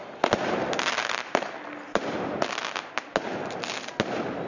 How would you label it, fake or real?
real